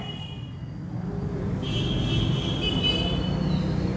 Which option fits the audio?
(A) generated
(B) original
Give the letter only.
B